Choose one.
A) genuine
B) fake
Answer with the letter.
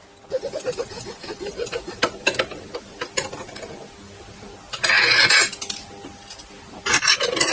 A